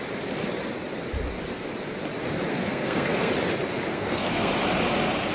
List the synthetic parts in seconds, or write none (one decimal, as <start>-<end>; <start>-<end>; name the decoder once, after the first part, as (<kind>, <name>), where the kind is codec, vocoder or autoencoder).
2.5-3.3 (codec, SNAC); 3.9-4.5